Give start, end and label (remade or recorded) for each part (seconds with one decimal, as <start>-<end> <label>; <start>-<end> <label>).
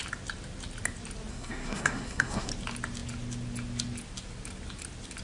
0.0-1.3 recorded; 1.3-2.5 remade; 2.5-5.2 recorded